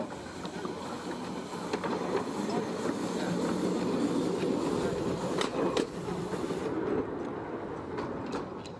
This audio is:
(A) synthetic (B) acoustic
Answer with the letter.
B